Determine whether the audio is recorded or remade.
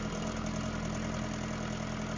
recorded